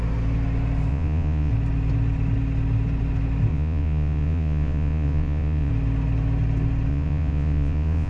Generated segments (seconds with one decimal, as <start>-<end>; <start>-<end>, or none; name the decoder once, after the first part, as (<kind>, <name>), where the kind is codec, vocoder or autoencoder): 0.9-1.5 (vocoder, Vocos); 3.5-5.7; 6.9-8.1